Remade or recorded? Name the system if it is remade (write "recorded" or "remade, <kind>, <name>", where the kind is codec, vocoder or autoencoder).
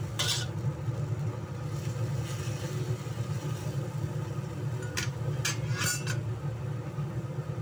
recorded